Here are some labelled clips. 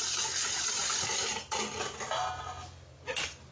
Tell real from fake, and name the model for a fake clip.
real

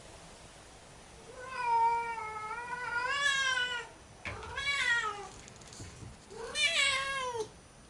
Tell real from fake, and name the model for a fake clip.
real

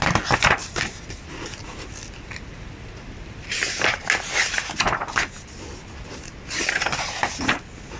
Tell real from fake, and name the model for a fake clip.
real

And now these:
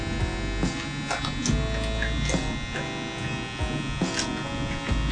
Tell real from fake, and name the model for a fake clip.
real